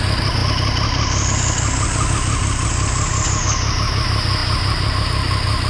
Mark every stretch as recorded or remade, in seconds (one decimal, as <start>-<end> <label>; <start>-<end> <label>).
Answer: 0.0-5.7 recorded